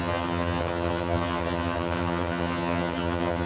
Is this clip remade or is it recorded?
remade